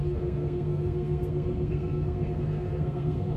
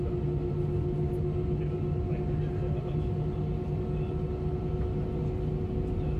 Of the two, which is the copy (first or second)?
first